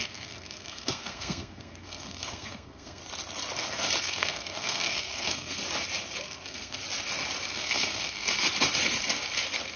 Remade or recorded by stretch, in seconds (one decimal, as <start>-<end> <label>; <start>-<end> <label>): 0.0-3.0 remade; 3.0-4.0 recorded; 4.0-5.6 remade; 5.6-6.2 recorded; 6.2-6.8 remade; 6.8-7.5 recorded; 7.5-8.3 remade; 8.3-9.8 recorded